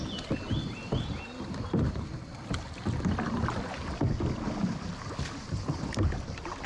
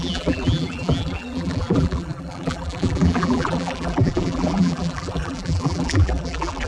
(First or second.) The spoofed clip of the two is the second